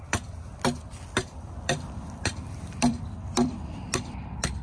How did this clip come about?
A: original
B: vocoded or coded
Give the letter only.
B